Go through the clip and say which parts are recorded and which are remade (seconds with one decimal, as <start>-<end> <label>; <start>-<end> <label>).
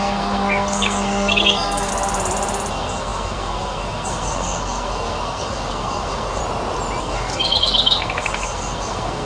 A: 0.0-1.9 remade; 1.9-2.7 recorded; 2.7-6.4 remade; 6.4-7.0 recorded; 7.0-9.3 remade